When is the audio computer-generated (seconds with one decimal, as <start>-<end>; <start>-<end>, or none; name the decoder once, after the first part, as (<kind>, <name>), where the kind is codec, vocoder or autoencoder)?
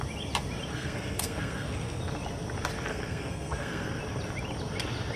0.7-2.0 (codec, SNAC); 2.9-4.0